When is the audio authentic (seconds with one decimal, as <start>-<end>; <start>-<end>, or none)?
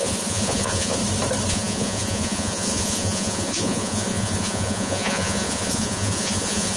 1.0-1.5